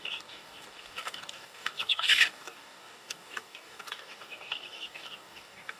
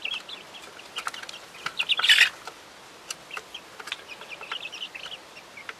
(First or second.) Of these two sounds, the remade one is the first